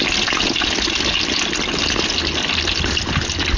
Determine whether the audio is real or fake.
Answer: real